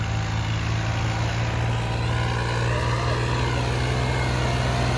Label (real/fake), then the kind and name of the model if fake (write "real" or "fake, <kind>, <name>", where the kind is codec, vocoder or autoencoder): real